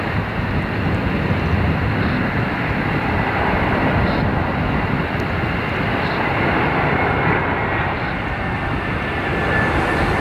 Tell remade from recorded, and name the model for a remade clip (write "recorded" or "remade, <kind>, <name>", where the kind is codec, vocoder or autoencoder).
recorded